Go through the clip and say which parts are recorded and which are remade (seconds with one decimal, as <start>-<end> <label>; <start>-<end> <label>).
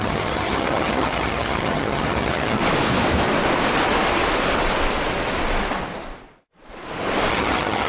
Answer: 0.0-2.6 remade; 2.6-7.3 recorded; 7.3-7.9 remade